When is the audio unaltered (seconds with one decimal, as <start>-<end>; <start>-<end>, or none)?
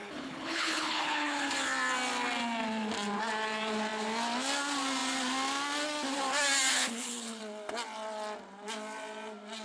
1.5-6.7; 7.4-9.6